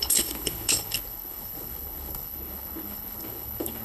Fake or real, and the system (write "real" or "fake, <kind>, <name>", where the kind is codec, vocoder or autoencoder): fake, codec, HILCodec